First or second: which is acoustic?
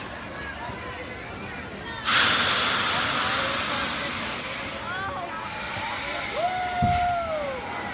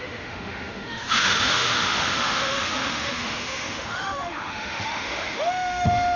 first